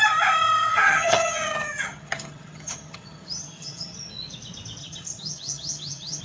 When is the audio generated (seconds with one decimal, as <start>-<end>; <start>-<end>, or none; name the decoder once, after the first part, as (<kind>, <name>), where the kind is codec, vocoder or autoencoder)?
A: 0.7-4.1 (vocoder, HiFi-GAN); 4.8-6.2